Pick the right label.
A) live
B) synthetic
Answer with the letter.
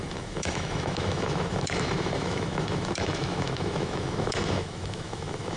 B